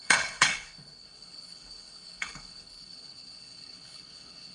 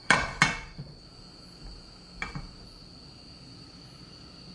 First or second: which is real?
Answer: second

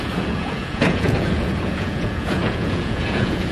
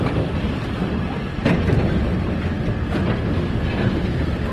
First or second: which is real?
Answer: second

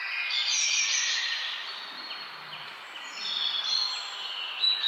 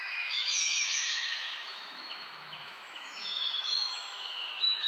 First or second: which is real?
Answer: first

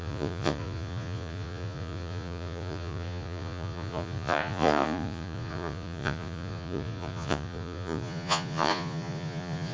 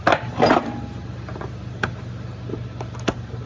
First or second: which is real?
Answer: second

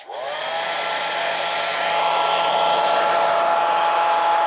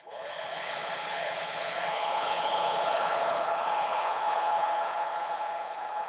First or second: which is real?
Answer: first